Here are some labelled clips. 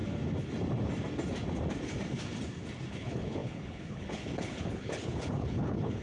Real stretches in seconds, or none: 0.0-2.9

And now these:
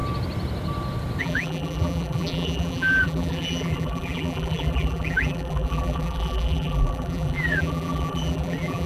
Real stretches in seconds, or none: 0.0-1.2